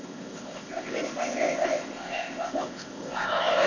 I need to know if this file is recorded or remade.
remade